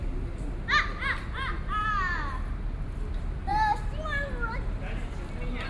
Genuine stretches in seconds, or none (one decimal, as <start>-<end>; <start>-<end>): 0.0-5.7